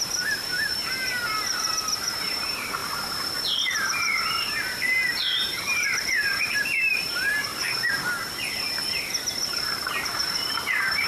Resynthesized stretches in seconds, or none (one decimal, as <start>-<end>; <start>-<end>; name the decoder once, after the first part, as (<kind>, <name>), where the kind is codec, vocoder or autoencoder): 0.0-2.8 (vocoder, BigVGAN v2); 3.5-7.5; 9.2-11.1

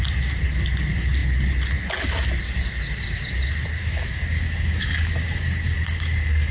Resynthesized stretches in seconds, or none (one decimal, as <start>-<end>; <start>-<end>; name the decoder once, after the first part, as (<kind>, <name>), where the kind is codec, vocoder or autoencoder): 3.8-6.5 (codec, DAC)

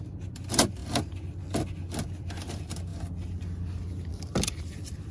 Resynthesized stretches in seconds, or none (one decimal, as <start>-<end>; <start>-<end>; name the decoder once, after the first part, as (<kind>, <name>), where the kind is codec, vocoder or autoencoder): 0.0-0.8 (vocoder, BigVGAN v2); 2.2-2.9; 4.1-5.1

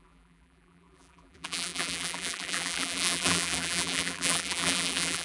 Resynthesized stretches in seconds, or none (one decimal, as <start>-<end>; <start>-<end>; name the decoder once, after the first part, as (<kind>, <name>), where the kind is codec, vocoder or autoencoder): 0.0-5.2 (vocoder, BigVGAN v2)

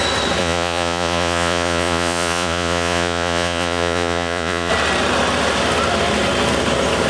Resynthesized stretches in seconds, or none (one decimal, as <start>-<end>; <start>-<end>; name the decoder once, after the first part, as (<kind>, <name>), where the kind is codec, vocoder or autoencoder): 0.4-4.7 (vocoder, Vocos)

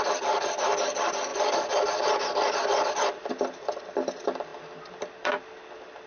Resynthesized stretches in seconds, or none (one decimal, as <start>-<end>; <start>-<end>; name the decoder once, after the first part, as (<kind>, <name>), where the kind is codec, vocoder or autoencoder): none

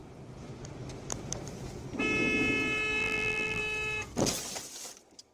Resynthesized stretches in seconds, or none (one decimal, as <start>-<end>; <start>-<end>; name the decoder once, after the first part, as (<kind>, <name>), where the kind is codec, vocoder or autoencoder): 3.0-3.6 (vocoder, BigVGAN v2)

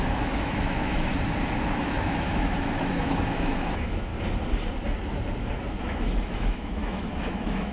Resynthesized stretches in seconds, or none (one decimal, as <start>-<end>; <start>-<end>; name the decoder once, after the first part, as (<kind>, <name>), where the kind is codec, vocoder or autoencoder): 0.0-1.1 (autoencoder, DAC-VAE); 1.7-4.1; 5.7-7.7